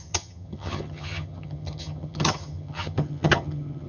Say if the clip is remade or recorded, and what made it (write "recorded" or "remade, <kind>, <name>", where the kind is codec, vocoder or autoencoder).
remade, vocoder, HiFi-GAN